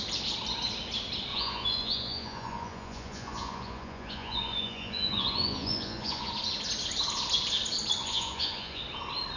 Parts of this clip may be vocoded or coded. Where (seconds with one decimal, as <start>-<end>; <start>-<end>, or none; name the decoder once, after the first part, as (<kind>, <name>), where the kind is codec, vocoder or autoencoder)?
1.3-6.3 (vocoder, Vocos); 8.0-8.8